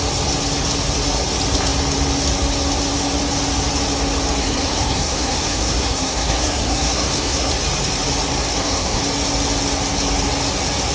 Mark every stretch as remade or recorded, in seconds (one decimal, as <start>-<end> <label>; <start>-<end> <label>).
0.0-4.4 recorded; 4.4-7.5 remade; 7.5-8.5 recorded; 8.5-9.0 remade; 9.0-10.9 recorded